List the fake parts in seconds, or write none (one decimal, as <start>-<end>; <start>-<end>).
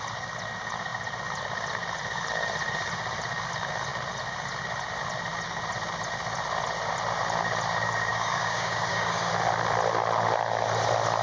8.1-9.3